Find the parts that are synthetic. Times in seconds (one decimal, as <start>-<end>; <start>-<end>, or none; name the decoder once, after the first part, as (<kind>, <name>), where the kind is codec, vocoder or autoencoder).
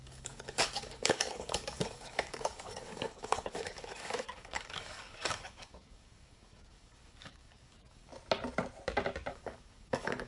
0.0-8.1 (codec, DAC); 9.3-10.3